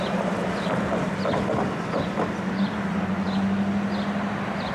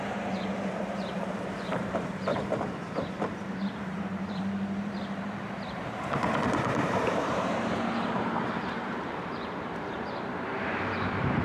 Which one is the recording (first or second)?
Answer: first